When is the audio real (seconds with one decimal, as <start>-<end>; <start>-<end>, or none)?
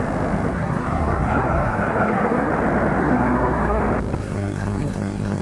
0.0-0.5; 2.5-3.0; 3.8-4.2